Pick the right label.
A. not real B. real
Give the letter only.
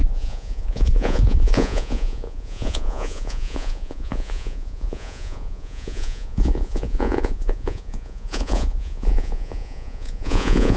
A